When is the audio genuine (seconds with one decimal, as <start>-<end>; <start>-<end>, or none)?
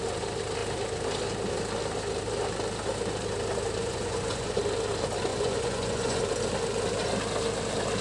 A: 0.0-3.8; 4.6-5.3; 6.2-8.0